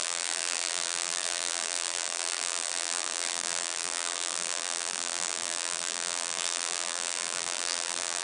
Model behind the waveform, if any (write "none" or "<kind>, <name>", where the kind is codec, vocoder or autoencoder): vocoder, BigVGAN v2